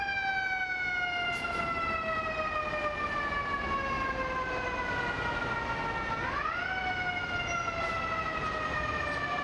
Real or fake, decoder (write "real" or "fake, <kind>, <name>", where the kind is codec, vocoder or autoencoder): real